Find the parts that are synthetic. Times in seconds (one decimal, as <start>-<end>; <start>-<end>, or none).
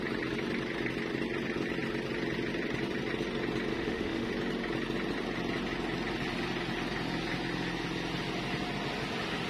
3.7-4.3